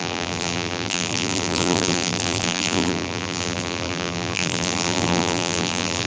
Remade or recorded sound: remade